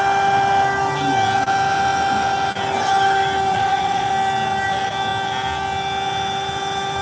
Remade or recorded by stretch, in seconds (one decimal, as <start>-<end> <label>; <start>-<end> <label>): 0.0-3.5 recorded; 3.5-4.1 remade; 4.1-7.0 recorded